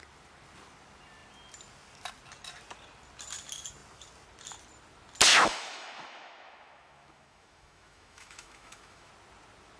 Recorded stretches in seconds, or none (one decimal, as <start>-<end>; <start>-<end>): 0.0-5.3; 9.1-9.8